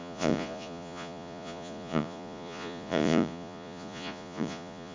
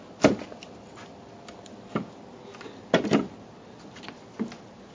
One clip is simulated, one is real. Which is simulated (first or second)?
first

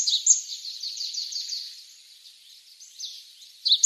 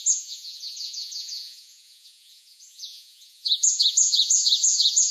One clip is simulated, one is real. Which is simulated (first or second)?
second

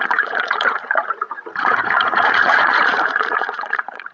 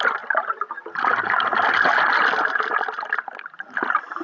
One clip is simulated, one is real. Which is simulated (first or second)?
first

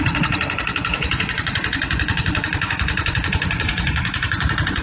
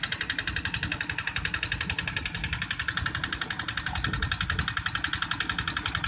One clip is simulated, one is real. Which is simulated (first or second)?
first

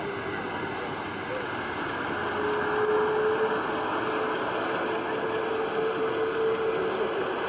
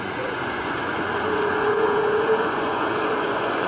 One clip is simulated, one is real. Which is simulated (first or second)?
second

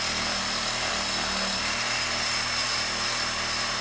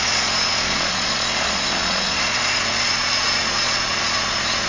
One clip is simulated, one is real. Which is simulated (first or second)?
second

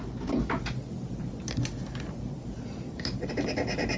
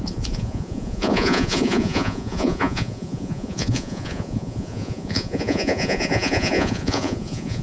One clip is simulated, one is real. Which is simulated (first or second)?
second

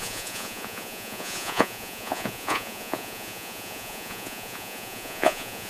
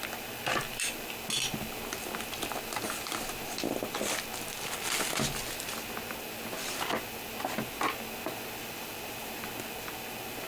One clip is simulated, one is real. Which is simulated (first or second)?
first